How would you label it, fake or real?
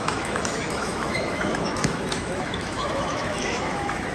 fake